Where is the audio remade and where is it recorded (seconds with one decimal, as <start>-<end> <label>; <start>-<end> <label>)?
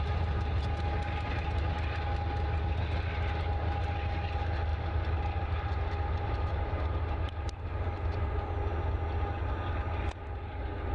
0.0-10.9 recorded